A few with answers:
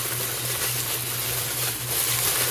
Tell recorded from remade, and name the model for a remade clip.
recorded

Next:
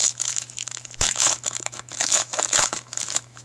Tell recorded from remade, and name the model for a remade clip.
remade, autoencoder, DAC-VAE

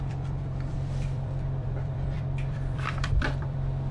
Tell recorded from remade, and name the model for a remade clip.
remade, vocoder, BigVGAN v2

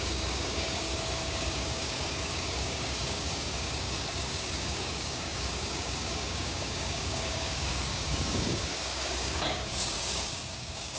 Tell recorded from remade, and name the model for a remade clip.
remade, codec, DAC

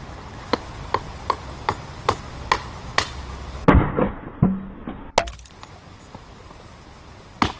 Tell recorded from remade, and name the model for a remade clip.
recorded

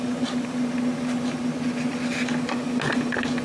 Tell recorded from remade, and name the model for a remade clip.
recorded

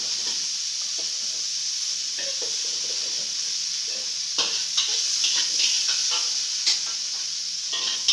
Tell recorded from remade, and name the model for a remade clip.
recorded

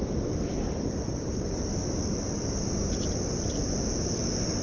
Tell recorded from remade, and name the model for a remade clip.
recorded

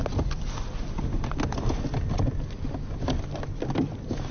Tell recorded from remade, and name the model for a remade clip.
recorded